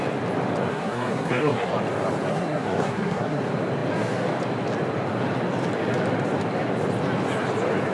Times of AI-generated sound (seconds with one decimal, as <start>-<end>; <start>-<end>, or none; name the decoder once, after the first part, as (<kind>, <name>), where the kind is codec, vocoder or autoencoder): 0.7-1.7 (codec, SNAC); 2.3-3.4